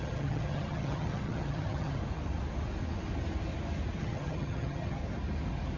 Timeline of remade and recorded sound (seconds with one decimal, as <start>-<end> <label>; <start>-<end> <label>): 0.0-2.0 remade; 2.0-4.0 recorded; 4.0-5.0 remade; 5.0-5.8 recorded